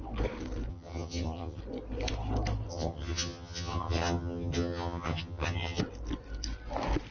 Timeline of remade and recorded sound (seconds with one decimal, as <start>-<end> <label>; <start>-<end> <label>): 0.0-0.7 recorded; 0.7-1.6 remade; 1.6-2.7 recorded; 2.7-5.8 remade; 5.8-7.1 recorded